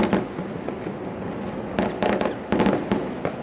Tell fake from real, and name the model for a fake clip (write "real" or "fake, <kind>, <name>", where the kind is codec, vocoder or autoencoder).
real